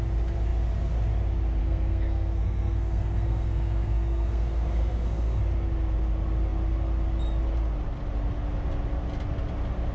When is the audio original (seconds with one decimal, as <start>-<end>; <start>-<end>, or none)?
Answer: 0.0-1.6; 5.4-9.9